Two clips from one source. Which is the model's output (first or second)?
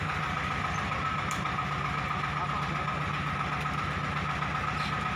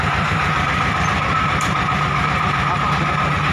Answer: second